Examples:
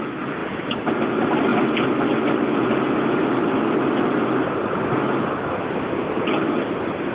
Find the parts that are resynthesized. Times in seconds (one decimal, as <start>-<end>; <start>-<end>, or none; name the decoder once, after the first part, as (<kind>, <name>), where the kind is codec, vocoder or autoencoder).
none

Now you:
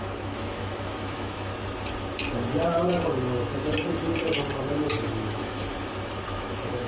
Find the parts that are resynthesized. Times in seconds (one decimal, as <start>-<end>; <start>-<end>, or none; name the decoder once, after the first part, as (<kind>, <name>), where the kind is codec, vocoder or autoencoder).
0.0-1.5 (autoencoder, DAC-VAE); 4.8-6.9

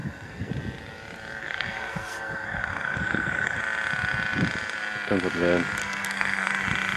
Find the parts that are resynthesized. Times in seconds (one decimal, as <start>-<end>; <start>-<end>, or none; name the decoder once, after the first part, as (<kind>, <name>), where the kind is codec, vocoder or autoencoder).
0.0-0.5 (codec, SNAC); 1.4-3.6; 5.8-6.5

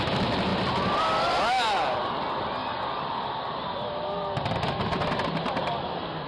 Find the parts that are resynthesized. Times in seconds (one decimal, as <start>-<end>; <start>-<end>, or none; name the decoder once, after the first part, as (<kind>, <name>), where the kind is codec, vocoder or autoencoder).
none